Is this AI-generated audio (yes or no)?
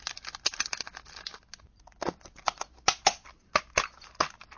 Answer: no